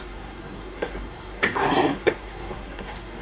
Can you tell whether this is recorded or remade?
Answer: remade